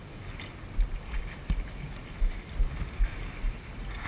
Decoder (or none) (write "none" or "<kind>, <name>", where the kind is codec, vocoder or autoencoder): none